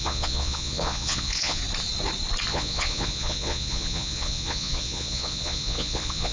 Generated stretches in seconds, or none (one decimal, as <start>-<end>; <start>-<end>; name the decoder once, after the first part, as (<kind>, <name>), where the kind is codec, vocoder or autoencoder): 0.0-1.6 (vocoder, Vocos); 2.5-6.3

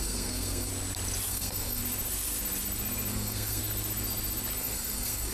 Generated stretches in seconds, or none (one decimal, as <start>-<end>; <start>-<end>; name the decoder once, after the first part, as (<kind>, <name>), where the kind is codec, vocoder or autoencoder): 0.0-0.7 (codec, SNAC); 1.3-1.8; 3.1-3.6; 4.6-5.3

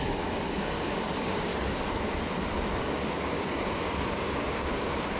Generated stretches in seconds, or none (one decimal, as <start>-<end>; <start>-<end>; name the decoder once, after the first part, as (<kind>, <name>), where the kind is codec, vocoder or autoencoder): 0.0-1.5 (codec, DAC); 3.1-5.2

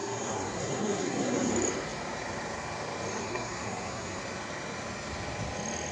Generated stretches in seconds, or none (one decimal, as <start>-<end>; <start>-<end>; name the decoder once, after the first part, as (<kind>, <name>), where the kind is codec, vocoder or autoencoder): 0.0-1.5 (codec, SNAC); 3.2-4.2

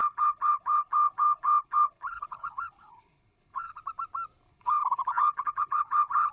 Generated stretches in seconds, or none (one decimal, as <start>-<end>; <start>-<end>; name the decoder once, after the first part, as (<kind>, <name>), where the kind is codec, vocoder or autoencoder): 0.0-3.8 (codec, HILCodec); 4.5-6.3

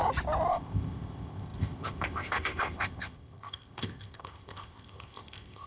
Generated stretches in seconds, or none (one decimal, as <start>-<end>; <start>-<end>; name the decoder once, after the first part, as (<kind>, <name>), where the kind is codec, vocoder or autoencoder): 0.5-5.7 (codec, ZipCodec)

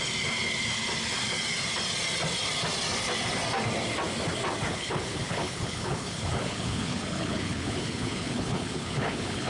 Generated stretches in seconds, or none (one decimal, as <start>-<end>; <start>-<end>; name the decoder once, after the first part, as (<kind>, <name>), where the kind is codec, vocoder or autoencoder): 4.7-9.5 (codec, HILCodec)

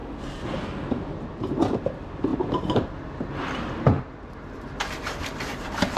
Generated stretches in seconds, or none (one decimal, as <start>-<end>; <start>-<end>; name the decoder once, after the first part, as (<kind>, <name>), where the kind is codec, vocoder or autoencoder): 1.5-6.0 (vocoder, BigVGAN v2)